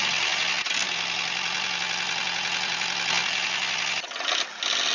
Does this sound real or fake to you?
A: real